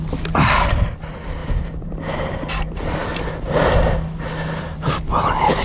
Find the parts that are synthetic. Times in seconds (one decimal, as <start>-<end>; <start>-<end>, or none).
none